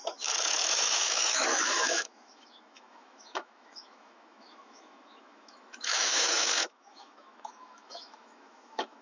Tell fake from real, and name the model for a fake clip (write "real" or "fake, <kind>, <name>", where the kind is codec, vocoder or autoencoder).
fake, autoencoder, DAC-VAE